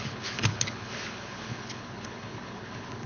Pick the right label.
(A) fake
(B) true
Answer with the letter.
A